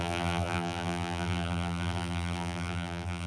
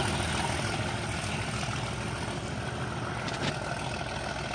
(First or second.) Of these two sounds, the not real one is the first